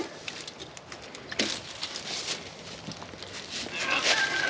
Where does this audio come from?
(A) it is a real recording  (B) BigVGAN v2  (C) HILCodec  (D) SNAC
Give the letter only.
A